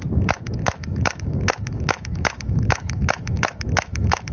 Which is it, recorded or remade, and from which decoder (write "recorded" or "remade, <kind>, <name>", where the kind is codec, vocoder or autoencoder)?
remade, autoencoder, DAC-VAE